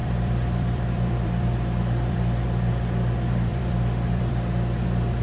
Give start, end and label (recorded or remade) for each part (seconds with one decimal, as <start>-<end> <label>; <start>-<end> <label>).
0.0-2.7 remade; 2.7-3.5 recorded; 3.5-4.3 remade; 4.3-5.2 recorded